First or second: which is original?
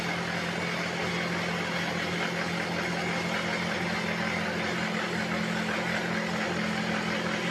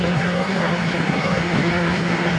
first